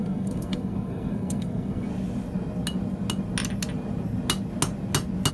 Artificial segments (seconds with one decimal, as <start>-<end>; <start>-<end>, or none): 0.0-1.9